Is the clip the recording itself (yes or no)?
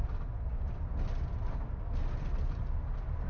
yes